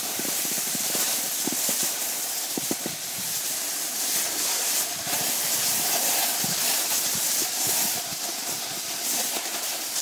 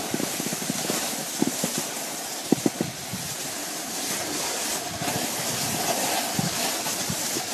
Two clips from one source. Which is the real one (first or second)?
second